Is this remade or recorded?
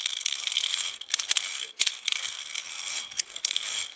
remade